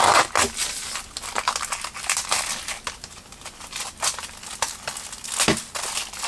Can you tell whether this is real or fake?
real